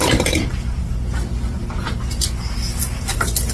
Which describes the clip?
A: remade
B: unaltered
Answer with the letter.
B